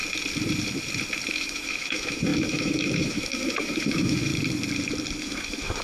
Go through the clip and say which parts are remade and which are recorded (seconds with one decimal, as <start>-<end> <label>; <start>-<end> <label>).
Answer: 0.0-1.3 recorded; 1.3-4.3 remade; 4.3-5.2 recorded; 5.2-5.8 remade